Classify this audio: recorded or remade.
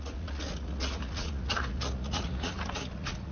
remade